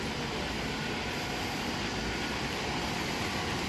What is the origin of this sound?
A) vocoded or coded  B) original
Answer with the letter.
B